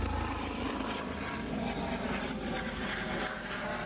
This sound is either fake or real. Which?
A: real